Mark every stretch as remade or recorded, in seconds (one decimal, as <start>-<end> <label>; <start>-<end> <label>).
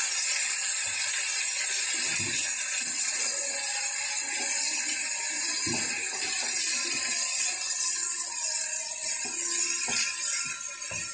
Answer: 0.0-11.1 recorded